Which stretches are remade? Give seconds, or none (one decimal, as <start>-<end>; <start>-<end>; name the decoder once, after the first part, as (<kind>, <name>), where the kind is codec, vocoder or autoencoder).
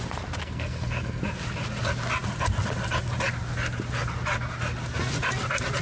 0.4-1.2 (codec, SNAC)